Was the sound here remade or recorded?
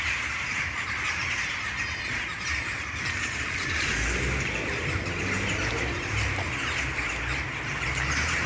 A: recorded